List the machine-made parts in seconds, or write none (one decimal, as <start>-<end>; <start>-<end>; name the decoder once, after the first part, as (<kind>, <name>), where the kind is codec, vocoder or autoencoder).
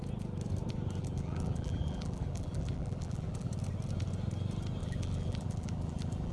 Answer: 1.0-3.5 (vocoder, BigVGAN v2); 4.8-6.3